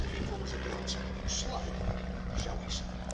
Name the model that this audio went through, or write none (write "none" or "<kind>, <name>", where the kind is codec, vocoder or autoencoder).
none